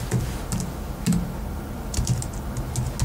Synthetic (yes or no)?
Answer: no